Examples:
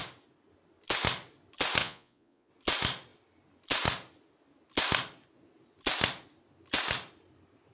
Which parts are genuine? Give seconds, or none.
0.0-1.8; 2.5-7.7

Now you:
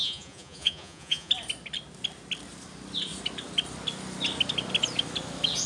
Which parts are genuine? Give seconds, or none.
1.3-5.7

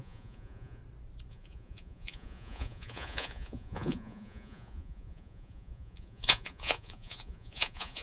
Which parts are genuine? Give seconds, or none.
0.8-1.3

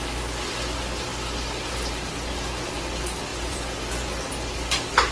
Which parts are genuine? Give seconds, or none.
0.0-3.3; 3.9-5.1

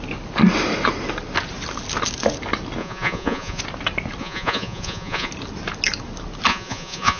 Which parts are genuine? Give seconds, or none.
0.0-2.8; 3.6-4.2; 5.3-6.5

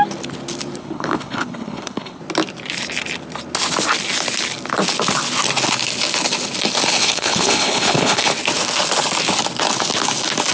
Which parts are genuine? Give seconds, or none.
0.0-0.8; 2.2-7.0; 8.2-10.5